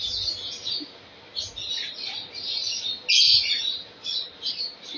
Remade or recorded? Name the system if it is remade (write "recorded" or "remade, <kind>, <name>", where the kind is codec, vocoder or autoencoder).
recorded